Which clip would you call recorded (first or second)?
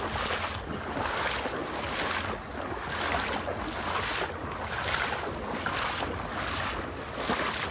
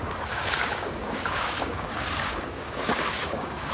first